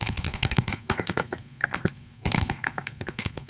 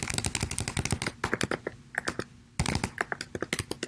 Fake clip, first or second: first